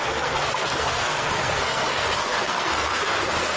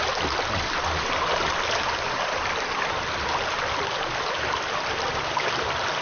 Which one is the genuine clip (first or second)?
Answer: second